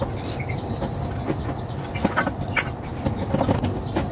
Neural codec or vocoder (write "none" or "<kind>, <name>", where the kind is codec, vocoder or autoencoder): none